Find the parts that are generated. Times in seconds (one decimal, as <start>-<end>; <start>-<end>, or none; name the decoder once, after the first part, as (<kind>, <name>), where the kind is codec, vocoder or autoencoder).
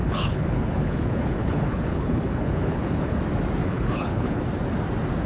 0.0-3.2 (codec, HILCodec); 3.6-4.4